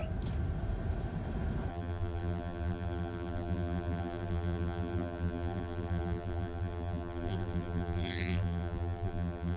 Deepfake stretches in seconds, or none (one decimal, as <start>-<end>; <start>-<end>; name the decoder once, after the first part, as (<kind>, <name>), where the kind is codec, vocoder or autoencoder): 1.7-9.6 (vocoder, BigVGAN v2)